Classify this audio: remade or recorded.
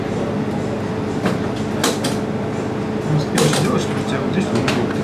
recorded